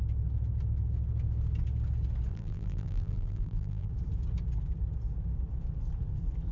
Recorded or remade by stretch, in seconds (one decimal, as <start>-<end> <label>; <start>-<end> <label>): 0.0-2.3 recorded; 2.3-3.9 remade; 3.9-6.5 recorded